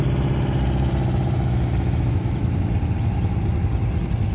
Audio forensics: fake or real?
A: real